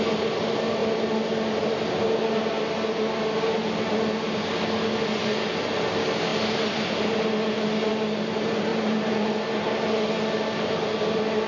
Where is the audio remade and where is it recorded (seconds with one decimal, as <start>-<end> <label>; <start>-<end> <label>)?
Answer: 0.0-8.7 recorded; 8.7-9.3 remade; 9.3-11.5 recorded